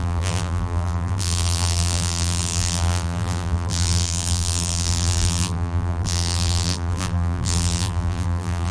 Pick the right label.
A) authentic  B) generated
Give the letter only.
B